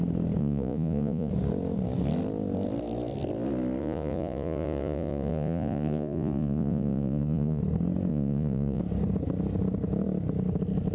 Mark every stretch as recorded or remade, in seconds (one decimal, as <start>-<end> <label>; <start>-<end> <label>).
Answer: 0.0-0.4 recorded; 0.4-1.3 remade; 1.3-3.8 recorded; 3.8-7.6 remade; 7.6-8.1 recorded; 8.1-8.8 remade; 8.8-10.9 recorded